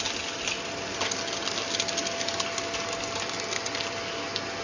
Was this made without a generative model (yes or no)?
yes